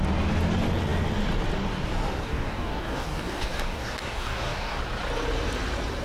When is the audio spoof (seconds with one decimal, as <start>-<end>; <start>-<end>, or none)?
2.2-4.8